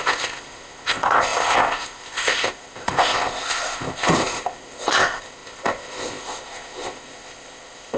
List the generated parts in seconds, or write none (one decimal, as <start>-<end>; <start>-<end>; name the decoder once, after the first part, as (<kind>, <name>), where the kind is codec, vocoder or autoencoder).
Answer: 0.0-8.0 (codec, ZipCodec)